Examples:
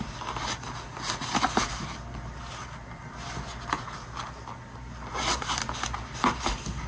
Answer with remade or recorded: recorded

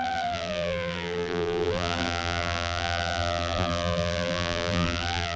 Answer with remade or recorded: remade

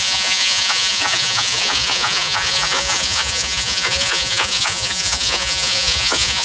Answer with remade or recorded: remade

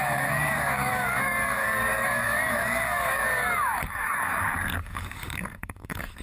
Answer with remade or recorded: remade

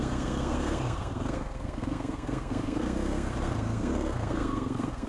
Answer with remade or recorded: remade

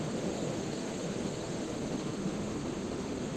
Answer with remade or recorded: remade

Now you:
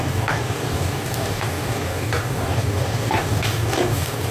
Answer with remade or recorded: remade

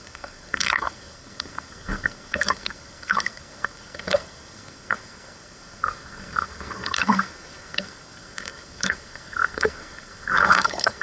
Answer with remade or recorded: remade